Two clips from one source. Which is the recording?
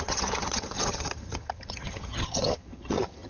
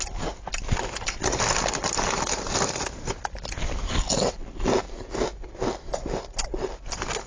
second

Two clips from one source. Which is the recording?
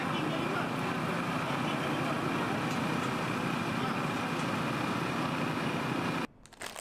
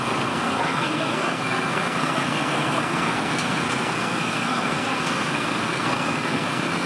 first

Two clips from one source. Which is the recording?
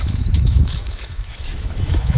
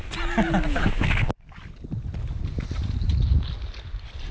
second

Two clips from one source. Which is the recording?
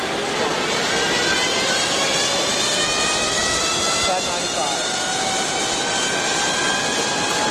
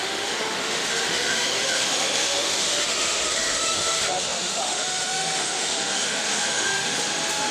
first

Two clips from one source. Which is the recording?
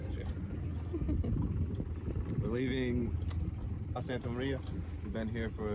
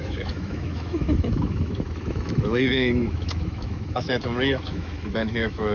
first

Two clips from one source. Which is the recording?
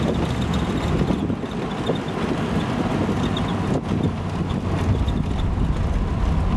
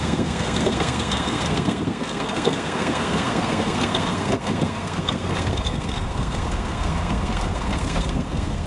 first